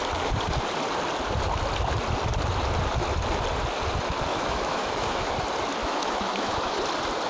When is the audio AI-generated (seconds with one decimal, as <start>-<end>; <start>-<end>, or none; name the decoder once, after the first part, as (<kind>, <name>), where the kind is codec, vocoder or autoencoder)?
4.3-5.3 (autoencoder, DAC-VAE); 5.8-6.8